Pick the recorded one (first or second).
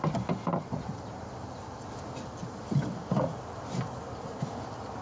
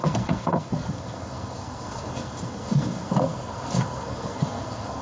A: first